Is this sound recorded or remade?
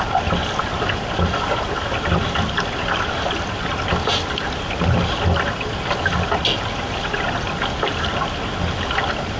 recorded